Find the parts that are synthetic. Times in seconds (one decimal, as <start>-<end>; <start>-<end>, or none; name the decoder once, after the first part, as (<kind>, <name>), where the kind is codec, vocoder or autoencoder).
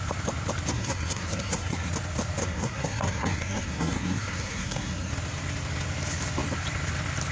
0.7-1.9 (codec, SNAC); 2.4-5.1